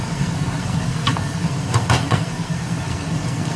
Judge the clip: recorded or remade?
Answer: remade